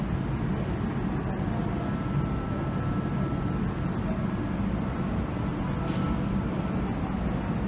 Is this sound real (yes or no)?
yes